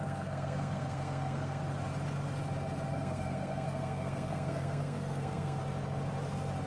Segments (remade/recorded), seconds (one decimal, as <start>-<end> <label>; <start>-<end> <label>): 0.0-1.6 remade; 1.6-2.9 recorded; 2.9-5.6 remade; 5.6-6.7 recorded